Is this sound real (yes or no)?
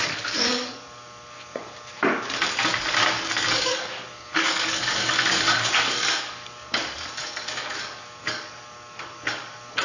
no